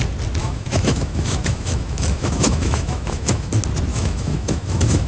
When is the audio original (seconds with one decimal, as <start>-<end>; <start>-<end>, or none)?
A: 0.0-0.4; 3.5-3.9